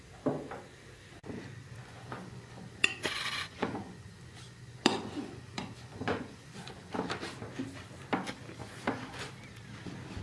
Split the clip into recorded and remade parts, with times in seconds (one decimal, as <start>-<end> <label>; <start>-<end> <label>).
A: 0.0-1.8 recorded; 1.8-6.9 remade; 6.9-8.6 recorded; 8.6-9.3 remade; 9.3-10.2 recorded